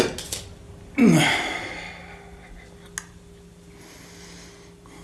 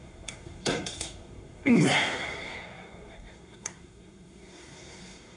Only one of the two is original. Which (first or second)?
first